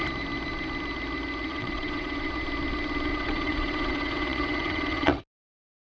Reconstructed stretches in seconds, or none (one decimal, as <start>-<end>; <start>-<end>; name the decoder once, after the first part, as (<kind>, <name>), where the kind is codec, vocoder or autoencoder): 1.5-2.2 (vocoder, WaveNeXt); 3.1-5.2